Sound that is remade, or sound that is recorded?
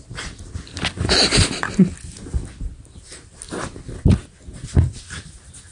recorded